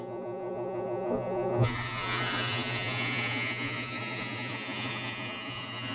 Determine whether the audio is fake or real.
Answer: fake